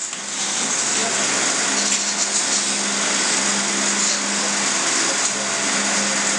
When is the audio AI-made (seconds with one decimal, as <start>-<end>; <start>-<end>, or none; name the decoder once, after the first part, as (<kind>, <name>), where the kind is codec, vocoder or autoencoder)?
none